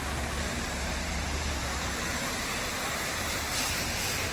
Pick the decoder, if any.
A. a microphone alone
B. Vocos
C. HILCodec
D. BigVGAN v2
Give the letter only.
D